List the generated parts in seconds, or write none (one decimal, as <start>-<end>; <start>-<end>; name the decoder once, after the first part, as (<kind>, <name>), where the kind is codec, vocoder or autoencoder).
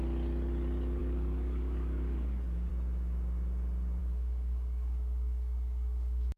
1.0-2.7 (codec, DAC); 4.0-6.4